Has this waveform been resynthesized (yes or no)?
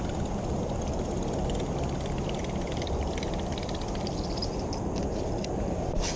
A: no